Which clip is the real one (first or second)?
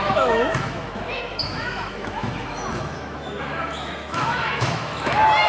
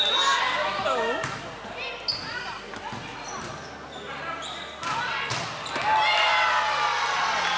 second